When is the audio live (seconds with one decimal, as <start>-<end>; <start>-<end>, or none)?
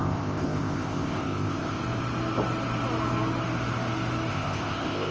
1.8-4.3